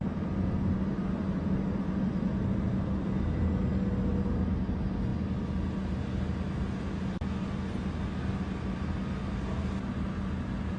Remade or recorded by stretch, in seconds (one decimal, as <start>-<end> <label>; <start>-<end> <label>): 0.0-10.8 recorded

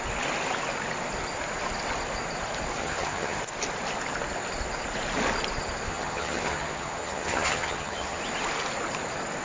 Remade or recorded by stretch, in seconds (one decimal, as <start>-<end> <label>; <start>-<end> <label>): 0.0-2.8 recorded; 2.8-3.4 remade; 3.4-5.9 recorded; 5.9-8.2 remade; 8.2-9.4 recorded

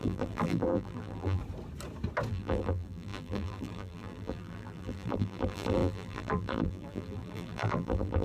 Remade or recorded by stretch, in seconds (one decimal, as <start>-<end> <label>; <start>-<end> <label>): 0.0-1.4 remade; 1.4-2.3 recorded; 2.3-8.2 remade

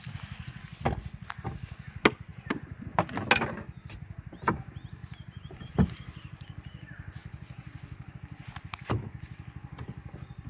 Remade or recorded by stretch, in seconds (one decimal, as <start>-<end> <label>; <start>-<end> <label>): 0.0-2.3 recorded; 2.3-2.8 remade; 2.8-5.0 recorded; 5.0-5.7 remade; 5.7-10.5 recorded

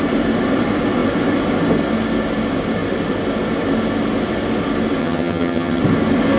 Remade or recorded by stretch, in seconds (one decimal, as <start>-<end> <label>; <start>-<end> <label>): 0.0-5.0 recorded; 5.0-5.8 remade; 5.8-6.4 recorded